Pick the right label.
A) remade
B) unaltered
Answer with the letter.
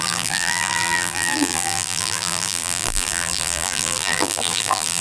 A